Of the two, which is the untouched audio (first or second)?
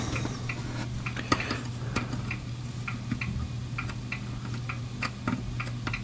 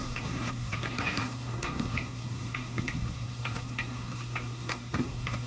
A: first